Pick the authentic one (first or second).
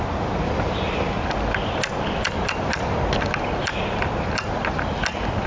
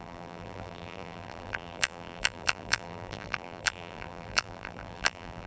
first